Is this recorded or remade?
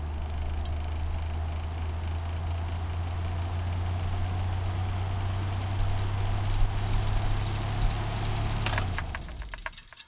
recorded